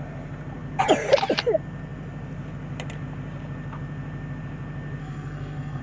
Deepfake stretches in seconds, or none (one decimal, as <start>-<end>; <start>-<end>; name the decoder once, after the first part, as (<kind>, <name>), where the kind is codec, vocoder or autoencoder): 5.0-5.8 (codec, SNAC)